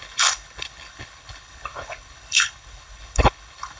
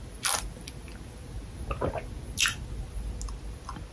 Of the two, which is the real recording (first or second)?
second